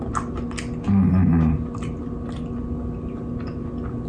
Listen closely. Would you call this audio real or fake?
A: real